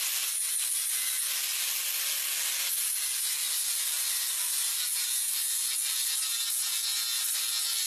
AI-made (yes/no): no